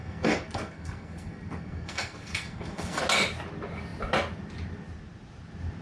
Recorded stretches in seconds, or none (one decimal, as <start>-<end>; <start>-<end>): 3.0-5.8